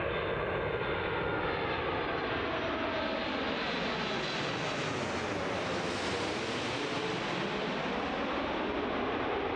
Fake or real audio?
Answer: real